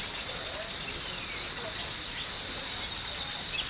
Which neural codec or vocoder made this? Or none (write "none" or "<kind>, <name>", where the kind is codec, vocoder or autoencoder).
none